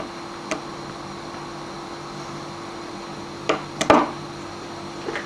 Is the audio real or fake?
real